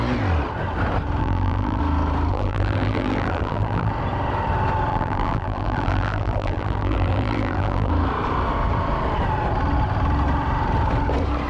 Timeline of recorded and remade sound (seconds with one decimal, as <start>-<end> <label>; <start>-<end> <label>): 0.0-1.2 recorded; 1.2-1.8 remade; 1.8-2.3 recorded; 2.3-3.9 remade; 3.9-4.9 recorded; 4.9-7.9 remade; 7.9-11.5 recorded